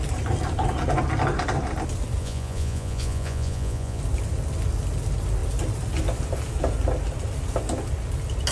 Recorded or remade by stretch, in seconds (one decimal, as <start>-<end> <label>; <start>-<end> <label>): 0.0-2.2 recorded; 2.2-4.0 remade; 4.0-8.5 recorded